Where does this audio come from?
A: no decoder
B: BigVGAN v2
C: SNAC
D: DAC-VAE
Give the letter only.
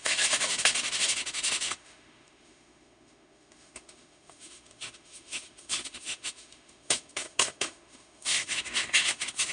D